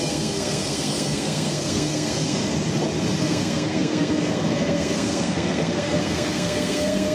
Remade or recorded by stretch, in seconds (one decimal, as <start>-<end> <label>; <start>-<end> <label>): 0.0-2.4 remade; 2.4-3.2 recorded; 3.2-7.1 remade